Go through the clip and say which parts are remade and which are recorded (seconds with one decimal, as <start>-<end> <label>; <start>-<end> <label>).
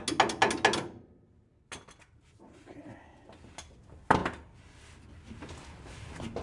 0.0-6.4 recorded